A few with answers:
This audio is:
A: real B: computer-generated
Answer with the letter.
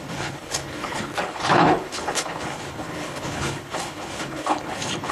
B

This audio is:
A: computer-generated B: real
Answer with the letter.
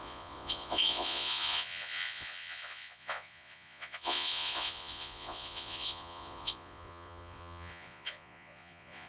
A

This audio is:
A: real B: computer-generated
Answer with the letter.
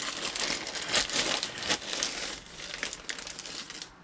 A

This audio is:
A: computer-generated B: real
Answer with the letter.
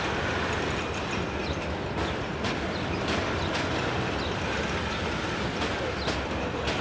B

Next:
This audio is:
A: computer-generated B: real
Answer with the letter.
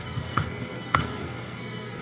A